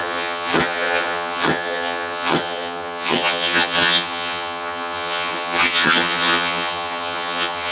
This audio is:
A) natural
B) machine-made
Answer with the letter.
B